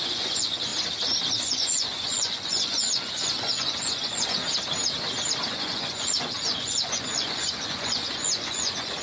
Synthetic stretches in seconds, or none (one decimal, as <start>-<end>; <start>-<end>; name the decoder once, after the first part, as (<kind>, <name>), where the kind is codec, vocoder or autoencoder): 0.0-0.7 (vocoder, Vocos); 1.4-4.4; 5.5-9.0